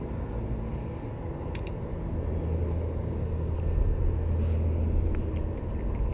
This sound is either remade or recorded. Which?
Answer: recorded